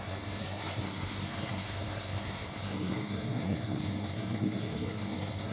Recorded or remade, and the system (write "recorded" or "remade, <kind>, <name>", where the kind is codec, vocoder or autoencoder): remade, codec, SNAC